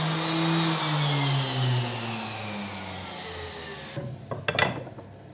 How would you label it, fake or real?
real